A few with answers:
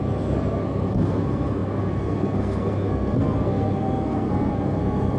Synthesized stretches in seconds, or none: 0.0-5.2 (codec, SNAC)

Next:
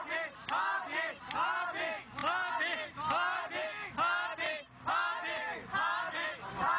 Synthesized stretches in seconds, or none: none

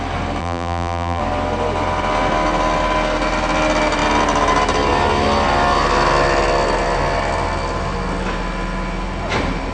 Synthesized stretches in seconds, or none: 0.4-1.2 (vocoder, BigVGAN v2)

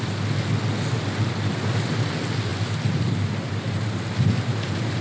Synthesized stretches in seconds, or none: none

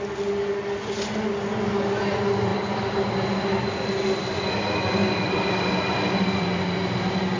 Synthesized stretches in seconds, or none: none

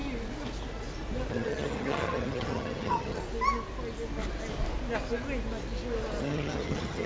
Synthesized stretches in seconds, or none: 1.3-3.2 (vocoder, HiFi-GAN); 6.2-7.1